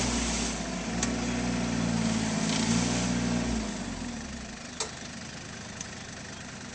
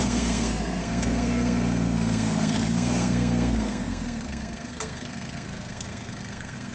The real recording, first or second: first